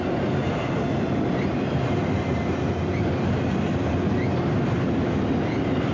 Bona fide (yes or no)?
yes